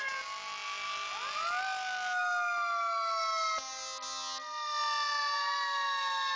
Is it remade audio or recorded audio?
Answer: recorded